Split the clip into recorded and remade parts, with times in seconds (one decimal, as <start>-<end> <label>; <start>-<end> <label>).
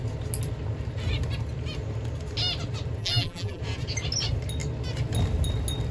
0.0-3.0 recorded; 3.0-3.6 remade; 3.6-5.9 recorded